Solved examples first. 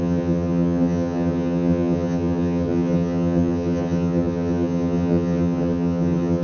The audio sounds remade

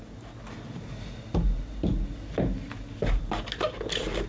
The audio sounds recorded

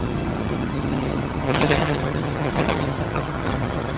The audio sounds remade